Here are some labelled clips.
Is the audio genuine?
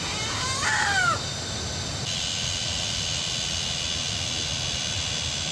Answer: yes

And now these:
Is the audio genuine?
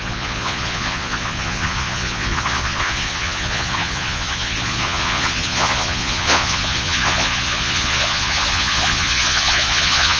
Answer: no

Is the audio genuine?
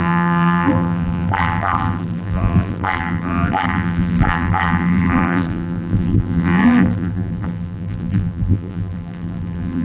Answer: no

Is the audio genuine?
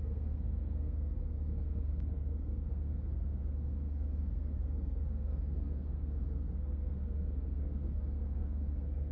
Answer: no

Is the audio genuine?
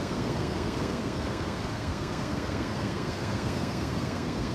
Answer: no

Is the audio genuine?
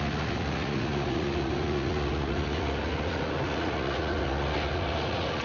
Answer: no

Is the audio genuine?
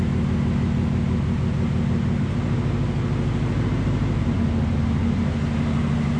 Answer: yes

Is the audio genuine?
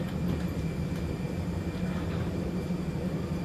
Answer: yes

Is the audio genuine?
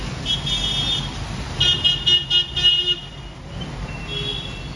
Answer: yes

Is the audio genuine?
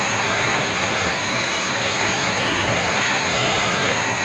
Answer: no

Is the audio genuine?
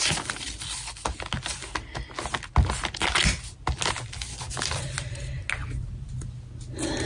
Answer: yes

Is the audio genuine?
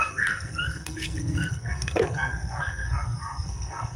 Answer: no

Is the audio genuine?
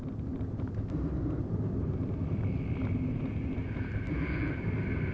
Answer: yes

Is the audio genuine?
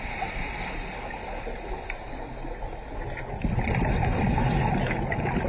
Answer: yes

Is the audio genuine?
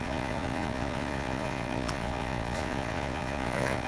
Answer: no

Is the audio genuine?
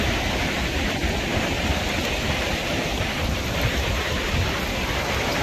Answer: yes